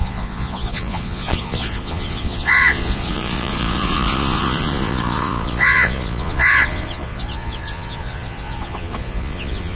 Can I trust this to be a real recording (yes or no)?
no